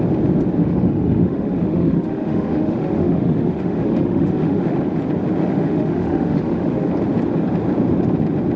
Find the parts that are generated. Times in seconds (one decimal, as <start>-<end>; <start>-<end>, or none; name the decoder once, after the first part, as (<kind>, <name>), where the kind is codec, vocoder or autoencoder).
0.6-4.8 (autoencoder, DAC-VAE); 5.4-6.9